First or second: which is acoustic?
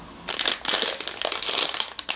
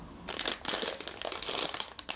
first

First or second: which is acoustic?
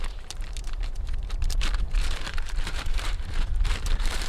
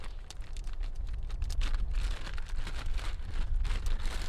second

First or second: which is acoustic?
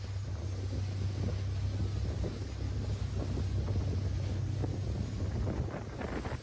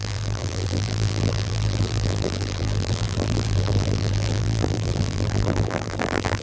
first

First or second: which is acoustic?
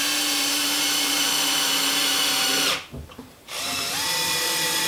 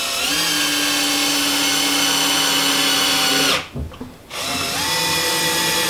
second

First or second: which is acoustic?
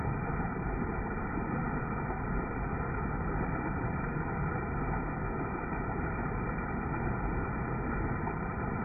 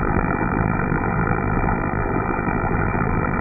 first